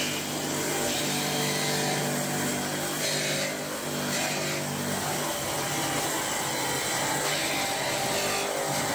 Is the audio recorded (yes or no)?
yes